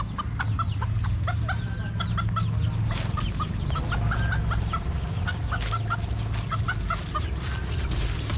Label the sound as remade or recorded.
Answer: recorded